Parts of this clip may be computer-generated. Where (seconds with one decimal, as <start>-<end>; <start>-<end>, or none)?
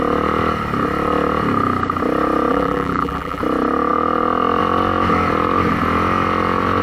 2.5-3.4